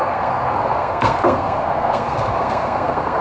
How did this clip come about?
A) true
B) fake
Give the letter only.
B